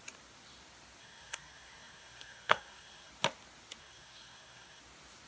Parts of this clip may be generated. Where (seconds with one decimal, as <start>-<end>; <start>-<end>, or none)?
1.0-3.1; 3.8-4.8